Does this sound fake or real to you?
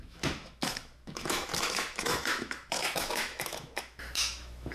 fake